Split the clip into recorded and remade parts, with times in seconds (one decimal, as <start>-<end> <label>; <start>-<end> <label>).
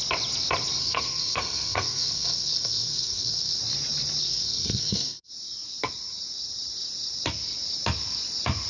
0.0-0.8 recorded; 0.8-3.6 remade; 3.6-4.2 recorded; 4.2-5.3 remade; 5.3-8.7 recorded